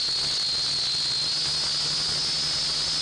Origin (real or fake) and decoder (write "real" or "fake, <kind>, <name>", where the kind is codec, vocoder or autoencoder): real